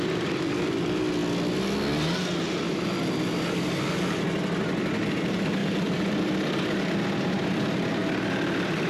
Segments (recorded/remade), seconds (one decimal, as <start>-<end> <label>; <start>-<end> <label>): 0.0-5.6 recorded; 5.6-6.2 remade; 6.2-8.9 recorded